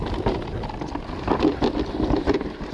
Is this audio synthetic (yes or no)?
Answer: no